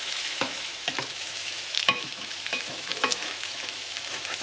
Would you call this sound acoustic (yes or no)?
no